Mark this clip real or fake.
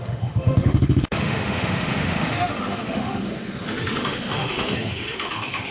fake